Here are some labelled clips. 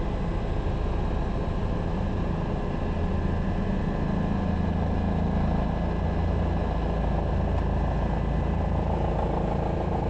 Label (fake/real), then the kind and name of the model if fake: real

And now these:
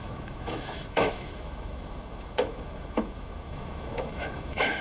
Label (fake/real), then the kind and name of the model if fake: fake, autoencoder, DAC-VAE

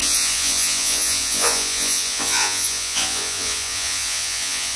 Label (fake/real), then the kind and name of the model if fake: fake, vocoder, Vocos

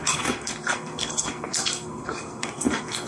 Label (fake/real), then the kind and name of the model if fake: fake, codec, SNAC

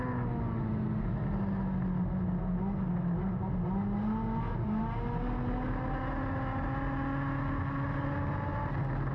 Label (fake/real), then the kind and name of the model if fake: real